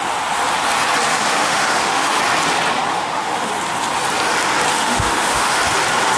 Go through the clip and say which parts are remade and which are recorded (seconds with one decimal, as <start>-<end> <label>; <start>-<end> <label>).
0.0-1.1 recorded; 1.1-2.2 remade; 2.2-2.9 recorded; 2.9-3.5 remade; 3.5-4.7 recorded; 4.7-5.6 remade; 5.6-6.2 recorded